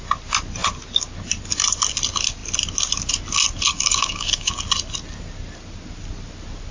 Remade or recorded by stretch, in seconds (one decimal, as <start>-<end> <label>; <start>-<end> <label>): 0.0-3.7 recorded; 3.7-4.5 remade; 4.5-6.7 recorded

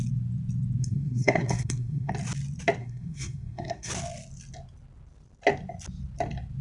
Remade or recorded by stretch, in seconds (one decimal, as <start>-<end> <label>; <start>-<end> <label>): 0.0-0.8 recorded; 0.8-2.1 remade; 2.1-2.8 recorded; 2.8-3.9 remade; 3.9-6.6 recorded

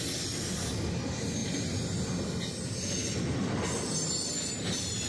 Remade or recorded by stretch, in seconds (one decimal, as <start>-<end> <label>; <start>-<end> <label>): 0.0-5.1 recorded

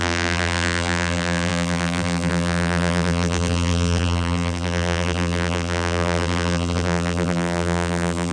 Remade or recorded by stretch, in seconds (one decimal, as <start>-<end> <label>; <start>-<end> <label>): 0.0-8.3 remade

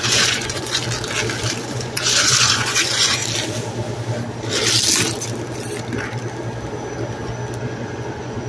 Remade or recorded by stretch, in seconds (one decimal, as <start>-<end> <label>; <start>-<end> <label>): 0.0-0.8 remade; 0.8-1.6 recorded; 1.6-3.2 remade; 3.2-7.6 recorded; 7.6-8.5 remade